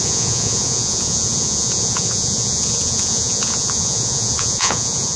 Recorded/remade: remade